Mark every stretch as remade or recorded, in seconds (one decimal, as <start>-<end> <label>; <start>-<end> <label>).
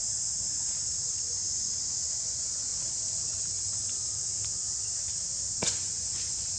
0.0-1.0 recorded; 1.0-2.7 remade; 2.7-5.7 recorded; 5.7-6.6 remade